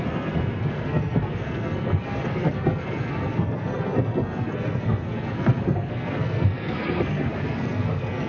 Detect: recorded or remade remade